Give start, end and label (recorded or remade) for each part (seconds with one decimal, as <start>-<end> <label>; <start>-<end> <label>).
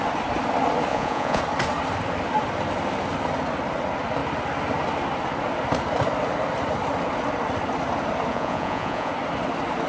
0.0-0.9 recorded; 0.9-1.4 remade; 1.4-8.3 recorded; 8.3-9.1 remade; 9.1-9.9 recorded